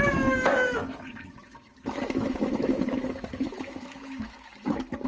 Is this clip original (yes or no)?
no